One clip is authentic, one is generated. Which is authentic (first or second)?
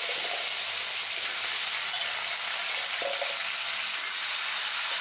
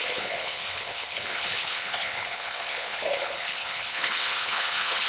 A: first